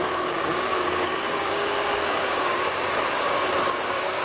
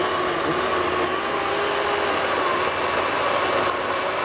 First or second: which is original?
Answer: second